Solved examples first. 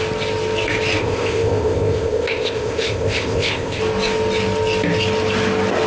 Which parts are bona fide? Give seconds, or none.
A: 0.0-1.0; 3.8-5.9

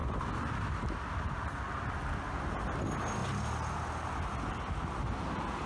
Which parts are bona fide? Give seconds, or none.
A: 0.0-5.7

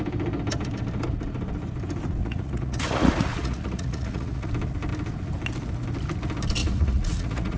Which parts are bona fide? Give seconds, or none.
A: 0.0-2.2; 4.5-6.6

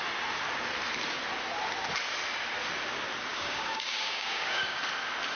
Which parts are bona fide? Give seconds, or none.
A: 0.0-3.3; 4.8-5.3